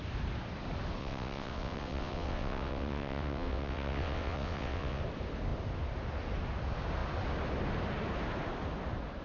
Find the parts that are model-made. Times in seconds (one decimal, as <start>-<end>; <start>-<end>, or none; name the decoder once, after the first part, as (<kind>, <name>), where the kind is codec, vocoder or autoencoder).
1.0-5.0 (vocoder, WaveNeXt)